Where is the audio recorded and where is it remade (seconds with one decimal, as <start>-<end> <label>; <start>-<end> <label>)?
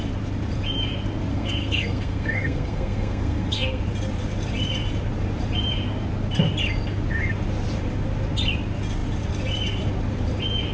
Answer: 0.0-1.3 recorded; 1.3-3.8 remade; 3.8-10.7 recorded